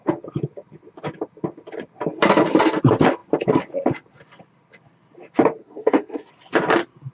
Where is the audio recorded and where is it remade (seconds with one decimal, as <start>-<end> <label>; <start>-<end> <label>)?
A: 0.0-5.6 recorded; 5.6-6.3 remade; 6.3-7.1 recorded